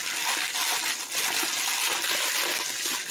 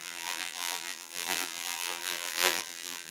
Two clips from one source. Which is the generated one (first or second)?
second